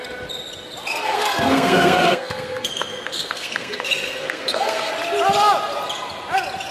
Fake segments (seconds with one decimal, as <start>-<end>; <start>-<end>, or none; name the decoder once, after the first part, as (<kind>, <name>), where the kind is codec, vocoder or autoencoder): 0.9-4.9 (codec, SNAC)